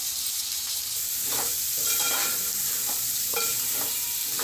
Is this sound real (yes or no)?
no